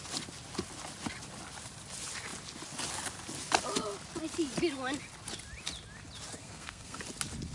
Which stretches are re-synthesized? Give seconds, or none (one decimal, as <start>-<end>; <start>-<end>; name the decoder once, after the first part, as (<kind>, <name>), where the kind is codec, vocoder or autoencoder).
6.4-7.0 (codec, SNAC)